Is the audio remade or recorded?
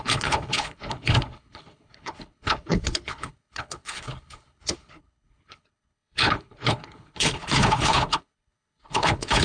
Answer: remade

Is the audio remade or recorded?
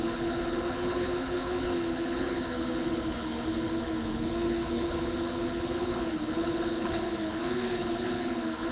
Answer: remade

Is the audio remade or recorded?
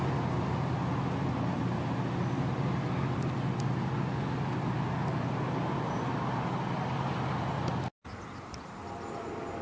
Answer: recorded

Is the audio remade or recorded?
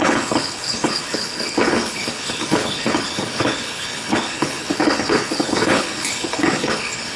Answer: remade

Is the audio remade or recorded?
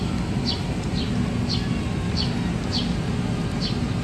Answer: recorded